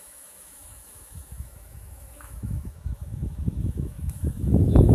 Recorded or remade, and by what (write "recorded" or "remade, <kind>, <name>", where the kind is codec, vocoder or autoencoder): remade, autoencoder, DAC-VAE